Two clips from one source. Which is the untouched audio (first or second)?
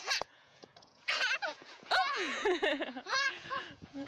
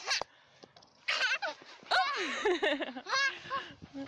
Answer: second